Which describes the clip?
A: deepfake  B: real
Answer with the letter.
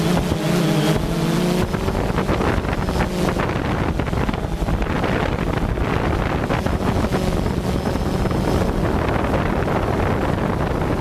B